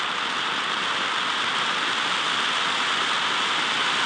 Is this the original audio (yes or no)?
yes